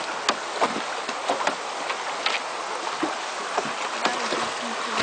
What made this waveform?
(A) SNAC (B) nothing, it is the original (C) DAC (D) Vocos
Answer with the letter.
B